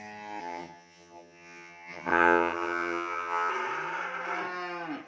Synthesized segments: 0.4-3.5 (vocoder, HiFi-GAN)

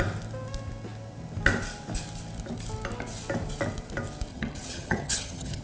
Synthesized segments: 4.3-5.6 (vocoder, HiFi-GAN)

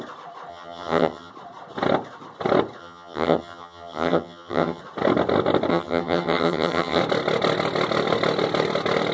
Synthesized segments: 0.5-1.3 (vocoder, HiFi-GAN); 2.8-4.8; 5.7-7.0

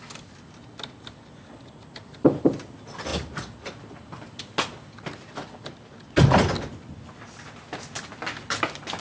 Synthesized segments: none

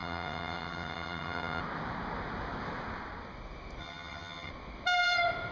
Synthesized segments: 0.0-1.6 (vocoder, HiFi-GAN); 3.8-4.5

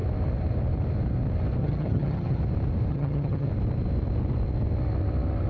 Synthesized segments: 1.6-2.4 (vocoder, HiFi-GAN); 2.9-3.5